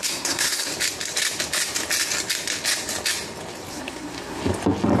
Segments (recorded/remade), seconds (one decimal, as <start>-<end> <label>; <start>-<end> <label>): 0.0-0.7 remade; 0.7-3.7 recorded; 3.7-4.4 remade; 4.4-5.0 recorded